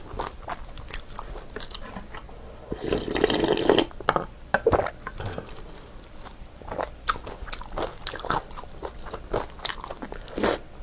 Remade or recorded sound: recorded